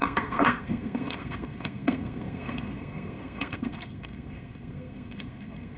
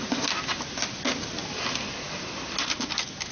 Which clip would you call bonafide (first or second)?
second